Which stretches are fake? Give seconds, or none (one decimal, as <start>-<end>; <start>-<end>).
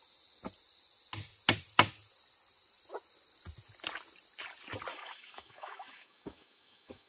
4.9-7.1